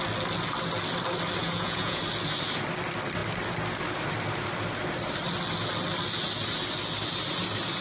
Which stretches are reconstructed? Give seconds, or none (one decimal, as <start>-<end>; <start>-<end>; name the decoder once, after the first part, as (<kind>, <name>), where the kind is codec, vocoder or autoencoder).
1.4-2.0 (vocoder, Vocos)